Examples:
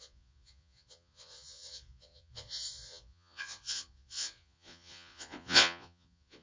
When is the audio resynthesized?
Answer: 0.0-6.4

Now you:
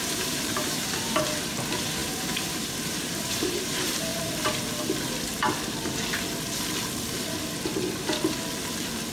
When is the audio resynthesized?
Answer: 0.0-4.1

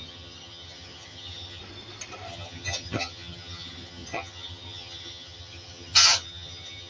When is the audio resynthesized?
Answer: 0.0-1.6; 2.3-6.9

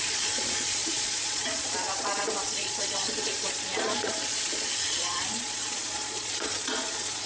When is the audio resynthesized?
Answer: 0.0-7.3

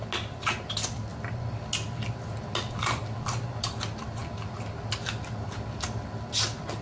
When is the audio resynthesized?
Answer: none

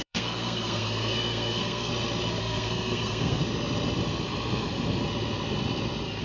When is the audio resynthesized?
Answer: 0.0-1.9; 2.4-3.4